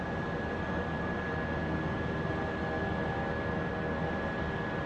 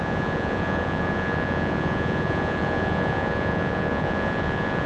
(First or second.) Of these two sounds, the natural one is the first